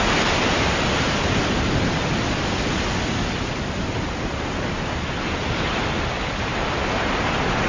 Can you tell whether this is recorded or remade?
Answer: recorded